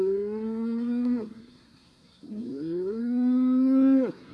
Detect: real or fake fake